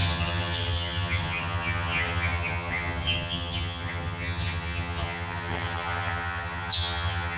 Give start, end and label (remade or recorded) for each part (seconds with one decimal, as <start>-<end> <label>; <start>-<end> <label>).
0.0-7.4 remade